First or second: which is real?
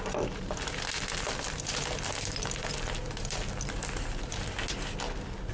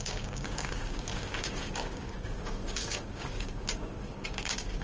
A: first